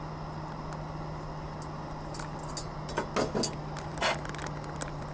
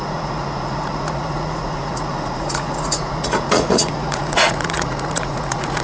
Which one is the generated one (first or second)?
second